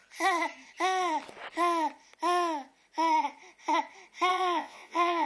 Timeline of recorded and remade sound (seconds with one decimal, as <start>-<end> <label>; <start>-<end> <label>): 0.0-4.3 recorded; 4.3-5.3 remade